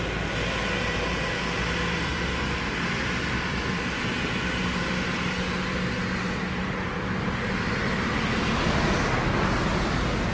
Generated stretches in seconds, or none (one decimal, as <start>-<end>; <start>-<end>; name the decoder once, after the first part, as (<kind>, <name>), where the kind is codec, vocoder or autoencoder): 2.1-4.0 (vocoder, BigVGAN v2)